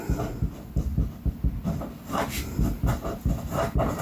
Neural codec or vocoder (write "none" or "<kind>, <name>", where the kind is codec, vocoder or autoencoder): none